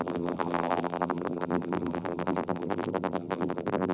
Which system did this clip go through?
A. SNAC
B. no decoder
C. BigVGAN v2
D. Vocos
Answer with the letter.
C